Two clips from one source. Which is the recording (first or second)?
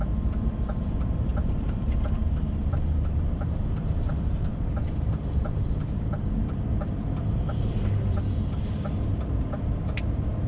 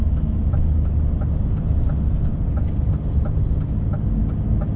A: second